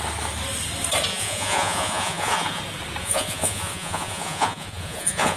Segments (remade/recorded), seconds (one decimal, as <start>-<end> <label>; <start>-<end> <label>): 0.0-1.1 recorded; 1.1-2.6 remade; 2.6-3.0 recorded; 3.0-5.4 remade